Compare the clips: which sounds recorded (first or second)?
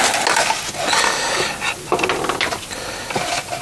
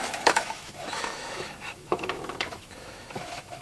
first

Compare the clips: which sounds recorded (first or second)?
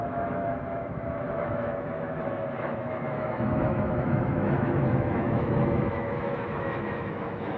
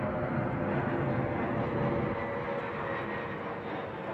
second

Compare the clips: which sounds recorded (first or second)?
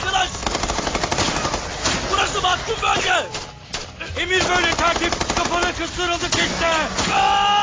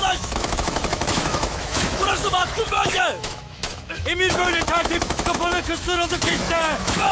first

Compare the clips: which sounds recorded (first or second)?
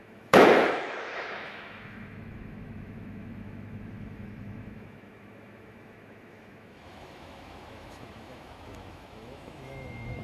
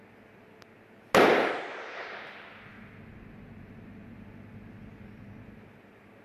second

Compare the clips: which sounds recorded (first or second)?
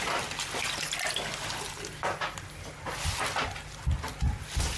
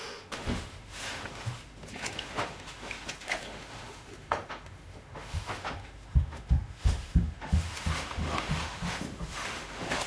first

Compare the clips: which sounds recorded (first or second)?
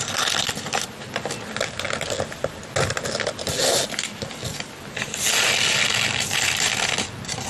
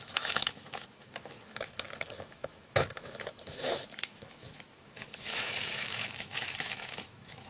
first